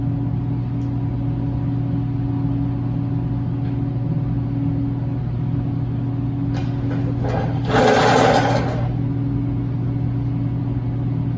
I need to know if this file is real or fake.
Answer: real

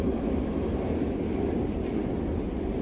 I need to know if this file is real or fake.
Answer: real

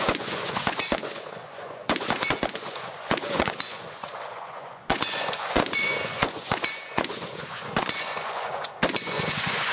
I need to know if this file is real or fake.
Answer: fake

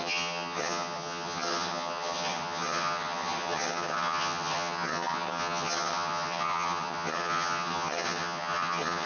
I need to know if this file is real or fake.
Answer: fake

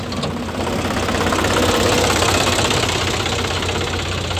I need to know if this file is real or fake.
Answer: real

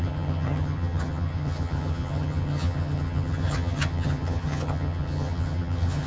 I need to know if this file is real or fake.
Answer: fake